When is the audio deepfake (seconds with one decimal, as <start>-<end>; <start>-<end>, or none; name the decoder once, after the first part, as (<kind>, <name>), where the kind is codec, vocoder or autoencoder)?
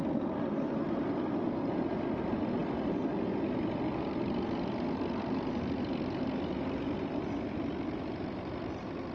none